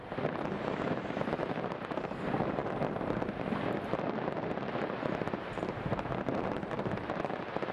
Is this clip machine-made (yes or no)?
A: yes